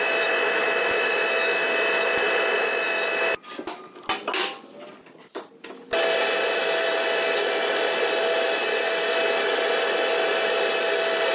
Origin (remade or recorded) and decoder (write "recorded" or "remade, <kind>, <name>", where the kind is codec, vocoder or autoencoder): recorded